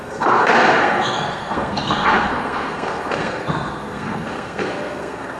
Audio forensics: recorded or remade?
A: remade